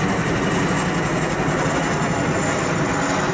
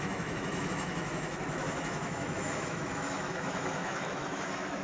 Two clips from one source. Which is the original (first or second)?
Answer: first